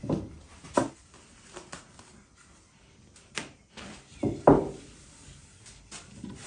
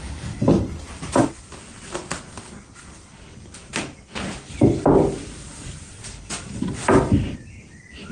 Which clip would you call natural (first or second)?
first